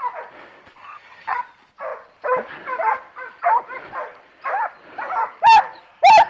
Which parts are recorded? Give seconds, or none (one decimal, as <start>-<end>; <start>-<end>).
0.0-0.8; 1.4-6.3